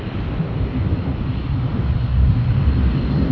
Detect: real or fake real